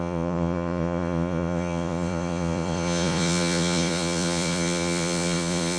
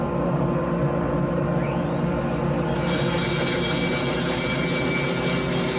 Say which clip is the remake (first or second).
first